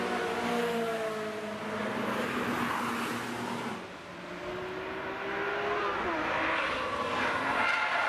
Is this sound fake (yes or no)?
no